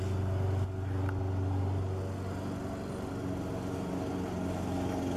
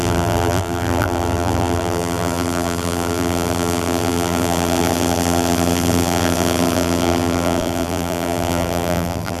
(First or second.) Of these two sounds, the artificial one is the second